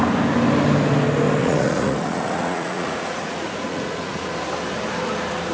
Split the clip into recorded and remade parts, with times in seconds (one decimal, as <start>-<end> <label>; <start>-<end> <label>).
0.0-1.4 recorded; 1.4-4.3 remade; 4.3-5.5 recorded